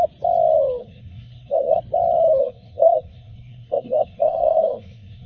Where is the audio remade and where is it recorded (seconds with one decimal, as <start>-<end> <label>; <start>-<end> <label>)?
0.0-0.8 recorded; 0.8-1.8 remade; 1.8-2.4 recorded; 2.4-5.3 remade